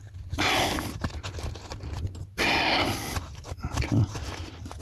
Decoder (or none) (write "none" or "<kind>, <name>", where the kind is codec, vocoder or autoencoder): none